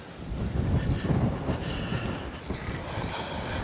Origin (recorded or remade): recorded